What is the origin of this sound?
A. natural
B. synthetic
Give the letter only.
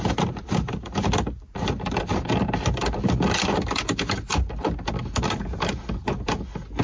A